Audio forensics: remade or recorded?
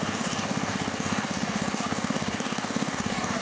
remade